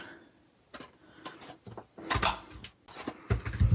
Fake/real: real